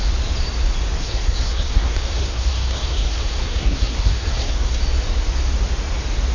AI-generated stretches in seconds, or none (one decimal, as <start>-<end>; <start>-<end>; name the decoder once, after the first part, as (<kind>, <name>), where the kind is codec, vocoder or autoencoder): 1.0-4.8 (codec, SNAC)